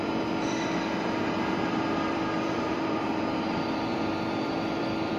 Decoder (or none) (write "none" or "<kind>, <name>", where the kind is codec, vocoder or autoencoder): vocoder, BigVGAN v2